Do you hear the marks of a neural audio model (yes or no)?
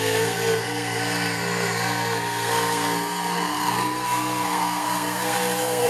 yes